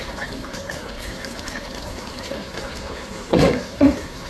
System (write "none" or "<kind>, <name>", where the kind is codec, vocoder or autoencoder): codec, SNAC